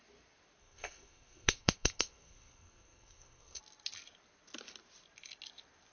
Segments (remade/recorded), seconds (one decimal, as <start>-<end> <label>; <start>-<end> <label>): 0.0-0.6 recorded; 0.6-3.6 remade; 3.6-5.9 recorded